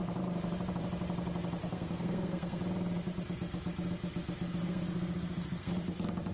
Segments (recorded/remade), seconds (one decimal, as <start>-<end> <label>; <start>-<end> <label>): 0.0-1.6 recorded; 1.6-2.6 remade; 2.6-4.6 recorded; 4.6-5.7 remade; 5.7-6.3 recorded